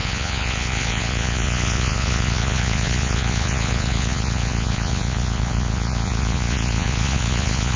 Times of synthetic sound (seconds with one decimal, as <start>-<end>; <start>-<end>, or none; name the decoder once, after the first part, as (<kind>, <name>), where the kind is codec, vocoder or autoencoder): 0.0-7.8 (vocoder, Vocos)